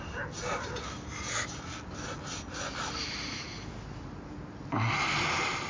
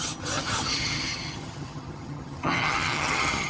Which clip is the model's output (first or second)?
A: second